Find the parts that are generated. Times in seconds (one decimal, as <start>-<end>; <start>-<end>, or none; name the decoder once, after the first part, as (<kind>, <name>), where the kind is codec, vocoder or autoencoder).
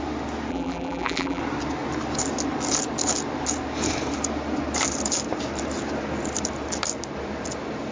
0.5-1.4 (vocoder, BigVGAN v2)